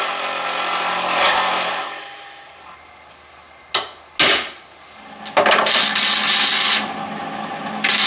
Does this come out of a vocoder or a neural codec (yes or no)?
no